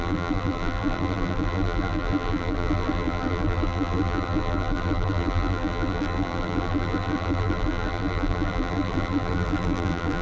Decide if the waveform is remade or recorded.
remade